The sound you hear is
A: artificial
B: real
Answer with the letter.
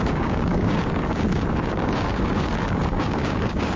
A